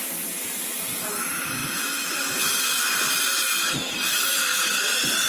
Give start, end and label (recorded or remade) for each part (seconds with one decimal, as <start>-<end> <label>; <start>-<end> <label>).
0.0-5.3 recorded